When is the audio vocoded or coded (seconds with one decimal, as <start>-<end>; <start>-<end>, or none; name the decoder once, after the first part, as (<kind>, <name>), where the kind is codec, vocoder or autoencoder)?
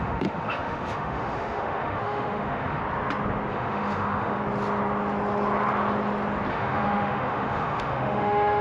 0.0-2.8 (autoencoder, DAC-VAE); 3.5-4.4; 6.5-8.6